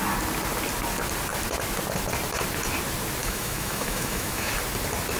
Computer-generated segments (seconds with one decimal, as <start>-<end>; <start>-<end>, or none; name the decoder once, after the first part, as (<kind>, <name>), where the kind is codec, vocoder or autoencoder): 3.2-4.5 (autoencoder, DAC-VAE)